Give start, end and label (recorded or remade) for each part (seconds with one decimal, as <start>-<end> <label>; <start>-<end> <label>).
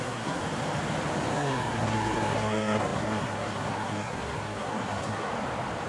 0.0-0.4 remade; 0.4-1.3 recorded; 1.3-5.3 remade; 5.3-5.9 recorded